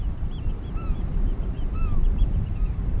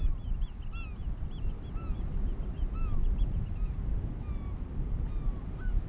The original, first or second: second